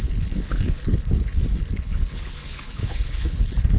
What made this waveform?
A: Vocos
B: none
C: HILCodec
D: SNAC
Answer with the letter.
C